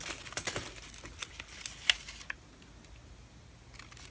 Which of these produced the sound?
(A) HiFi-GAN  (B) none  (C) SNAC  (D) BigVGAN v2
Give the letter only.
B